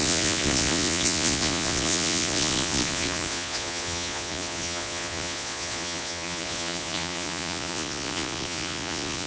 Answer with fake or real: fake